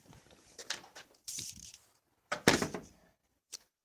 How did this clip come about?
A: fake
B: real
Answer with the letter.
B